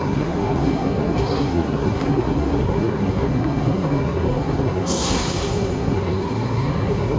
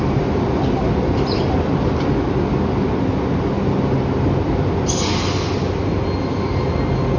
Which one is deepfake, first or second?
first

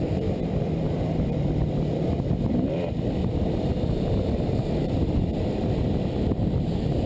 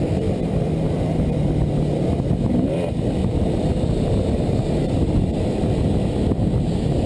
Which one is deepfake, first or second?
first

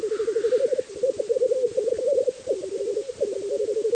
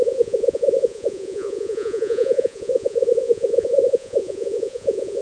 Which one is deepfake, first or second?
second